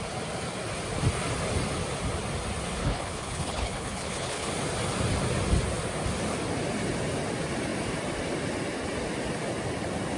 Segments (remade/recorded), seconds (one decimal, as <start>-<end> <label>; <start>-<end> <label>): 0.0-2.8 recorded; 2.8-4.5 remade; 4.5-10.2 recorded